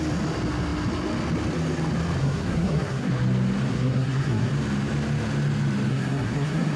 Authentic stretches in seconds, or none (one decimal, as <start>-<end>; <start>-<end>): 0.0-2.2; 3.1-3.7; 4.5-5.9